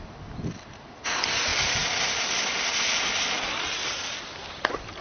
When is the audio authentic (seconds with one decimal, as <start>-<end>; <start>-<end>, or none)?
0.0-5.0